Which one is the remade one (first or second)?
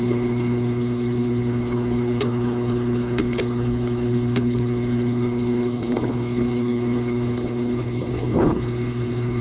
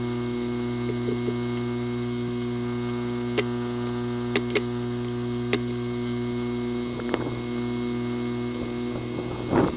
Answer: first